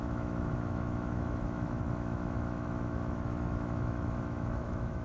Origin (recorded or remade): remade